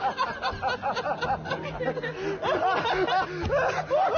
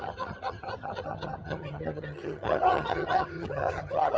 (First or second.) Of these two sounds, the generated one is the second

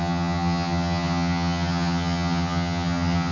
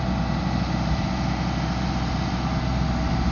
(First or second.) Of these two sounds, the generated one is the first